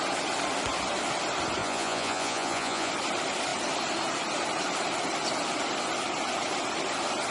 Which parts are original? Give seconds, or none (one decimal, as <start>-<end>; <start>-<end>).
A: 0.0-1.6; 2.9-7.3